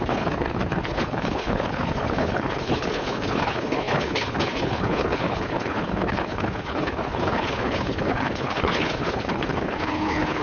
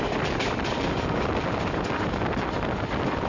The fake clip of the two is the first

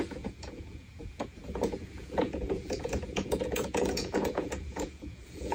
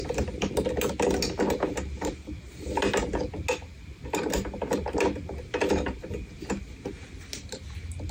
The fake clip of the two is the first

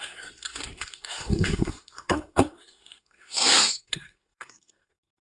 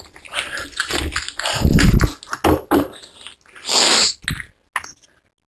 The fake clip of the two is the first